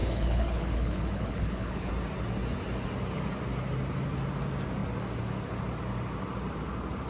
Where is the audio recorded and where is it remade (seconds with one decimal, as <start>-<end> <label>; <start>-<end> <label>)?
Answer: 0.0-1.9 remade; 1.9-7.1 recorded